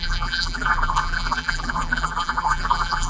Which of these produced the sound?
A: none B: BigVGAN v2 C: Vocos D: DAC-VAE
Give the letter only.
B